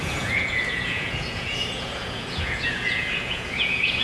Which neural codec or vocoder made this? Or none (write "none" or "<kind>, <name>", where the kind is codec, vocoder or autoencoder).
vocoder, Vocos